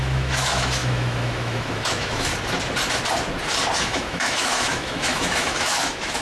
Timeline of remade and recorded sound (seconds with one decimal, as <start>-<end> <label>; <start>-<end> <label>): 0.0-2.3 remade; 2.3-3.8 recorded; 3.8-6.2 remade